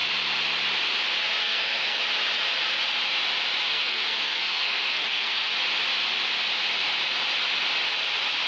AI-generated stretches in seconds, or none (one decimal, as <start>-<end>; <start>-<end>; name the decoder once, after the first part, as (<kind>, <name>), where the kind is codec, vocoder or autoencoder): 1.4-2.0 (codec, SNAC); 3.7-5.5